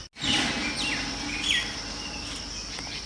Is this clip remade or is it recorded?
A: recorded